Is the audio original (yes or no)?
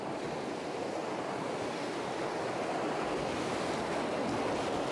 yes